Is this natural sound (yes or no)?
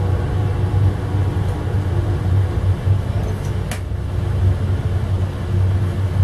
yes